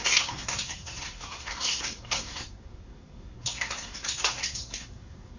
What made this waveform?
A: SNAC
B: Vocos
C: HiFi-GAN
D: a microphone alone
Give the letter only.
A